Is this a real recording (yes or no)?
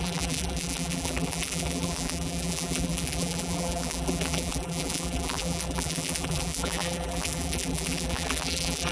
no